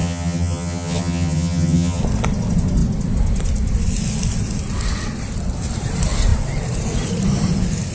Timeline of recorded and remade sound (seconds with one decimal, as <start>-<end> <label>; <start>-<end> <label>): 0.0-2.0 remade; 2.0-7.9 recorded